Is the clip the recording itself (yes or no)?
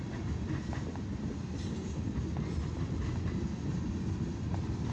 yes